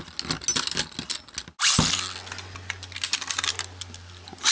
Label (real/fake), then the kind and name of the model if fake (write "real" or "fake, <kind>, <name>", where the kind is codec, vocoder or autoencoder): real